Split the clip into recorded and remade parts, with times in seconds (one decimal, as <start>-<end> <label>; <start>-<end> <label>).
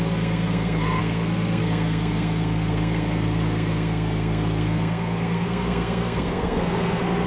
0.0-7.3 remade